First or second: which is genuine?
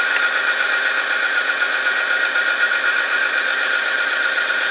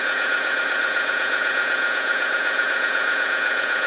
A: first